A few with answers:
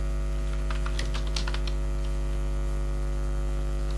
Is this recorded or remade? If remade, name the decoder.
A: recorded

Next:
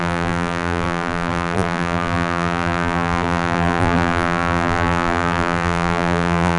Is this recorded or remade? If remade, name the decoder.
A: remade, vocoder, BigVGAN v2